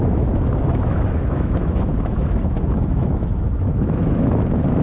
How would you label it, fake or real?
fake